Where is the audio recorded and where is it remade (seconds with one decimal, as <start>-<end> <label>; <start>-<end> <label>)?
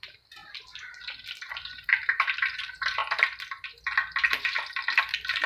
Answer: 0.0-0.4 remade; 0.4-1.5 recorded; 1.5-3.0 remade; 3.0-5.0 recorded; 5.0-5.5 remade